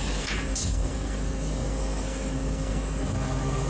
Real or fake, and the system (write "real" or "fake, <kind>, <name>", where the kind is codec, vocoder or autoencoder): fake, codec, SNAC